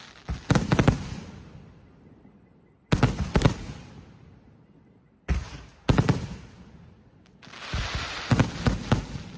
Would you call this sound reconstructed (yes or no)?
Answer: no